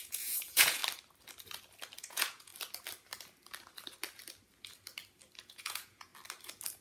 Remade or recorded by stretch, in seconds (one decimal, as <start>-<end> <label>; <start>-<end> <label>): 0.0-0.8 remade; 0.8-2.0 recorded; 2.0-2.5 remade; 2.5-5.4 recorded; 5.4-6.1 remade; 6.1-6.8 recorded